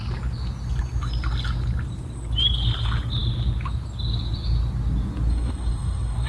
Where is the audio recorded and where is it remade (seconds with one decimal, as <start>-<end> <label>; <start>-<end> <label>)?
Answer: 0.0-5.3 recorded; 5.3-6.3 remade